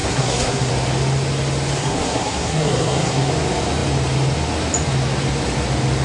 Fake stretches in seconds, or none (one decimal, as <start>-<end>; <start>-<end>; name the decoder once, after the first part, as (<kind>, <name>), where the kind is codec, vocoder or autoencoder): 0.0-0.7 (codec, SNAC); 1.8-3.3